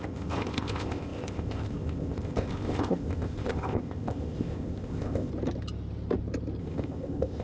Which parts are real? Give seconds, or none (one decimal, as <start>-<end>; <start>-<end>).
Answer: 5.3-6.6